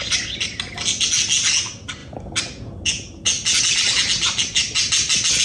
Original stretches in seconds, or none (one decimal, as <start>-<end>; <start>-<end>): 0.0-5.4